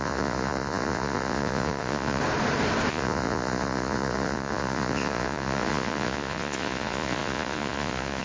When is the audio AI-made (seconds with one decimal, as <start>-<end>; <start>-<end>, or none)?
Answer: 0.0-2.2; 2.9-8.2

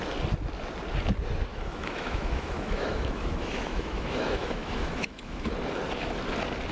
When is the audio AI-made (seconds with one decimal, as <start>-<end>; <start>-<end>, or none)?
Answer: 1.5-5.5

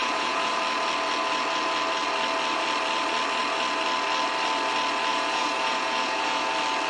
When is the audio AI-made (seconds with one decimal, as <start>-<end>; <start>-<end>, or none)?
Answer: 0.0-0.5; 5.1-6.5